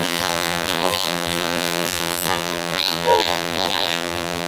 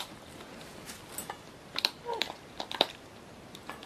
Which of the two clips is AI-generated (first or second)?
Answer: first